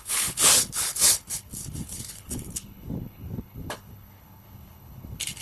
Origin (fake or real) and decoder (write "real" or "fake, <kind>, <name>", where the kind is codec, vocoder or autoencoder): fake, codec, HILCodec